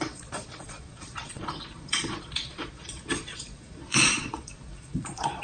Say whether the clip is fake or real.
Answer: fake